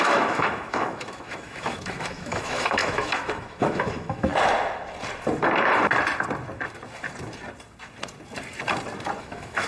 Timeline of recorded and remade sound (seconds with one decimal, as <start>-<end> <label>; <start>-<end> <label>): 0.0-4.3 remade; 4.3-9.2 recorded; 9.2-9.7 remade

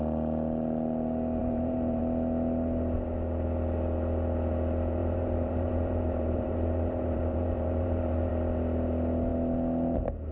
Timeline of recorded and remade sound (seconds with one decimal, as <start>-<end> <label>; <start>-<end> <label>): 0.0-1.4 recorded; 1.4-2.0 remade; 2.0-5.0 recorded; 5.0-8.3 remade; 8.3-10.3 recorded

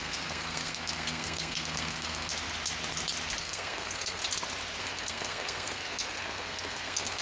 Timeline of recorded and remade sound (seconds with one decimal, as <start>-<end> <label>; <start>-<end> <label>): 0.0-2.3 remade; 2.3-3.4 recorded; 3.4-4.2 remade; 4.2-4.8 recorded; 4.8-7.2 remade

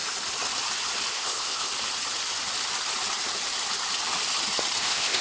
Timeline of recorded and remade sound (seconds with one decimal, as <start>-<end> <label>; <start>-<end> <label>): 0.0-1.1 recorded; 1.1-1.7 remade; 1.7-4.8 recorded; 4.8-5.2 remade

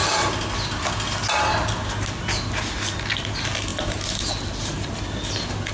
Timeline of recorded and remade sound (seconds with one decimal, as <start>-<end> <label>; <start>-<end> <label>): 0.0-5.7 recorded

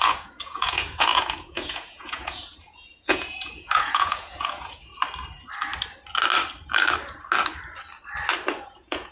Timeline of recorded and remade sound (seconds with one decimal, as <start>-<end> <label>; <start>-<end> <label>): 0.0-4.9 remade; 4.9-8.6 recorded; 8.6-9.1 remade

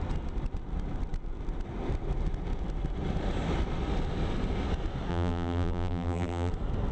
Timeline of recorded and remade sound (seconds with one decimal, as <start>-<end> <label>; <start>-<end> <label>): 0.0-5.1 recorded; 5.1-6.5 remade; 6.5-6.9 recorded